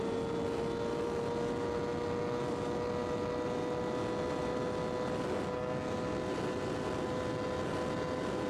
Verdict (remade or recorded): recorded